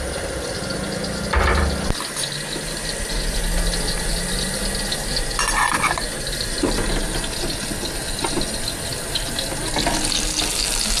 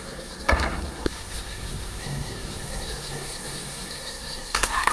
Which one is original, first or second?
first